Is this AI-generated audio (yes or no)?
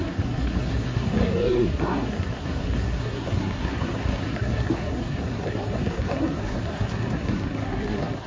yes